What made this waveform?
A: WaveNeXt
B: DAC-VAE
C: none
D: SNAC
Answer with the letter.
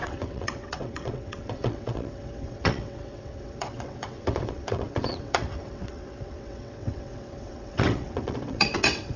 A